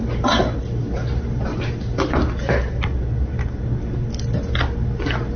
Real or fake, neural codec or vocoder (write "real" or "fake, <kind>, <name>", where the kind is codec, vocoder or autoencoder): real